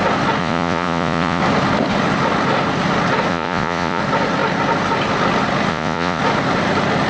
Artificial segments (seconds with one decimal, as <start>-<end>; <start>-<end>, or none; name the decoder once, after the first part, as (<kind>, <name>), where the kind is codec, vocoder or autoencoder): 0.4-1.4 (vocoder, Vocos); 3.3-4.0; 5.7-6.2